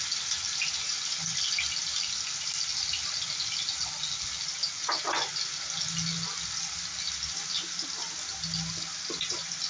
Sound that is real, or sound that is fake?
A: real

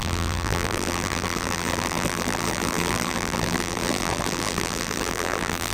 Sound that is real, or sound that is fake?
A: fake